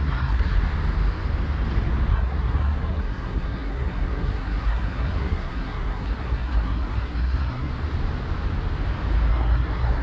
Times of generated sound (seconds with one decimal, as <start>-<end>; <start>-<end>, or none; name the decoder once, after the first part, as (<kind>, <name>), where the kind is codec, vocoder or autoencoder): 0.0-0.6 (codec, SNAC); 2.1-7.7; 9.3-10.0